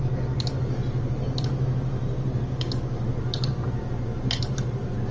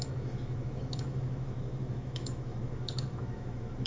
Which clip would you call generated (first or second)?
second